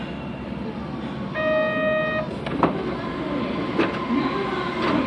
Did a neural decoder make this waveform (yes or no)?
no